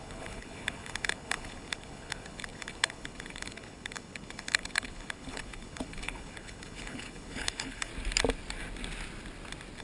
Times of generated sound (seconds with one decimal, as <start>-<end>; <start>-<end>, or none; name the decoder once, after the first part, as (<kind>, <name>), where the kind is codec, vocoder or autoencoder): 0.0-7.9 (codec, HILCodec)